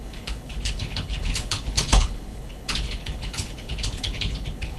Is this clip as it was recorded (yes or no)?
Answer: no